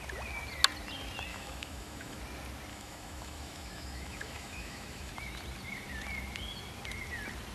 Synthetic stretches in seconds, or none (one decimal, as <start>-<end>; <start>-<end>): 1.3-2.2; 2.7-5.1